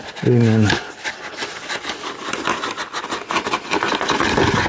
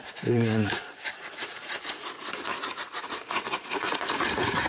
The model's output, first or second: second